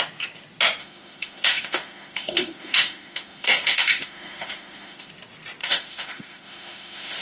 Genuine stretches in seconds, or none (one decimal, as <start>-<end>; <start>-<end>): 0.0-0.8; 5.1-5.6